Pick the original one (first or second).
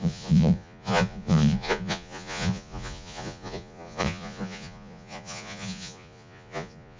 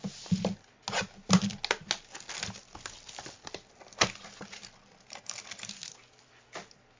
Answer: second